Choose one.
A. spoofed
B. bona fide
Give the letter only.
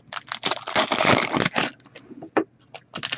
B